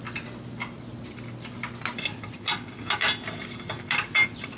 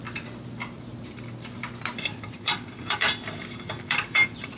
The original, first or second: first